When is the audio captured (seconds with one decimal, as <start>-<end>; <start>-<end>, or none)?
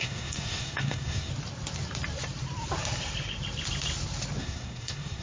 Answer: 1.3-4.4